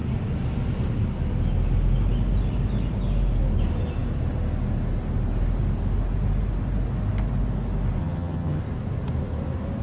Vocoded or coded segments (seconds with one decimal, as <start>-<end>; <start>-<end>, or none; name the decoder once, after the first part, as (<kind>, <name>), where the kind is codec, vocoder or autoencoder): 8.0-8.6 (vocoder, HiFi-GAN)